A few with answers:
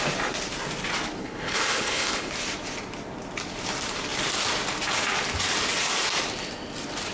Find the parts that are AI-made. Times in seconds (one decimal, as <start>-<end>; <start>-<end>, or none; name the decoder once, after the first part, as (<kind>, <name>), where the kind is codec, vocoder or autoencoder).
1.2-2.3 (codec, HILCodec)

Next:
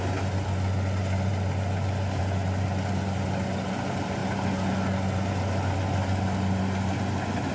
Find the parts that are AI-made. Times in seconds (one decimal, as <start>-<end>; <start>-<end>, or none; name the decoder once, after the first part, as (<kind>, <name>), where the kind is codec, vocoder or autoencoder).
none

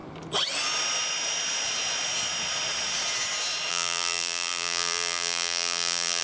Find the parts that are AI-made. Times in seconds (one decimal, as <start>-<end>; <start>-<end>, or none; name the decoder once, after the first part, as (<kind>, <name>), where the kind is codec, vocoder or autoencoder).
3.7-6.2 (vocoder, BigVGAN v2)

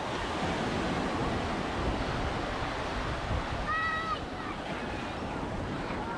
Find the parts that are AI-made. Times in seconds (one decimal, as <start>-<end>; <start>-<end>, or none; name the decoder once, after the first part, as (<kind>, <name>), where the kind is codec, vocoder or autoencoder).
none

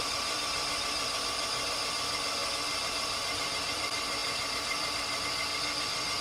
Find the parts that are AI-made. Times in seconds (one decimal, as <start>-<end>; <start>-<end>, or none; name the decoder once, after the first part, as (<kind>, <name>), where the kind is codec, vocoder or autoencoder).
0.0-6.2 (vocoder, BigVGAN v2)

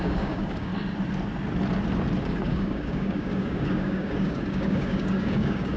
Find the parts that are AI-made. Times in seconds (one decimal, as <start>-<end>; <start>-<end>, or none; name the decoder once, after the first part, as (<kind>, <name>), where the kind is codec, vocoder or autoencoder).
0.0-0.7 (codec, DAC); 2.2-5.8